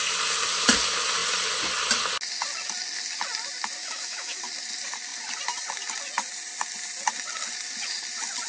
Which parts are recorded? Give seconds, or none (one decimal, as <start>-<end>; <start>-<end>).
0.0-3.8; 4.4-8.5